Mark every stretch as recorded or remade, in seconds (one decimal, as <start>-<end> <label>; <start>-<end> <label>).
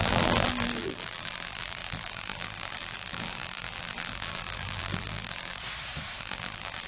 0.0-5.6 remade; 5.6-6.2 recorded; 6.2-6.9 remade